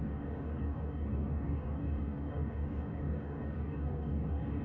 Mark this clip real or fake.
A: fake